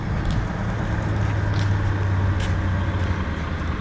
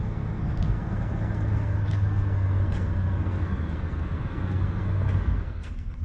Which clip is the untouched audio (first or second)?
first